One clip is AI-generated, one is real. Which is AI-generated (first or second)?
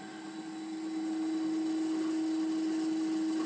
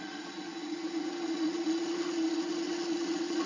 second